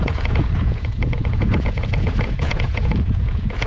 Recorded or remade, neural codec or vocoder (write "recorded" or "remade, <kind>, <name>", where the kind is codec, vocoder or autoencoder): remade, vocoder, Vocos